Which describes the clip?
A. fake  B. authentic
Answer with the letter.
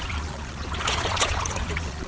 A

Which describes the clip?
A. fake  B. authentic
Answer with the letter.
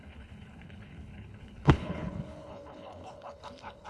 A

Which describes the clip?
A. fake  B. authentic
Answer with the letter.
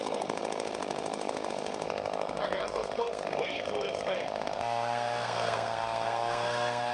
A